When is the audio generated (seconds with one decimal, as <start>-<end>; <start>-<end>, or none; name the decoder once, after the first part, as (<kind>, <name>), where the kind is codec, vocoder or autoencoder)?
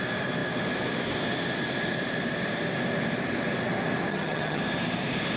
4.1-4.6 (vocoder, HiFi-GAN)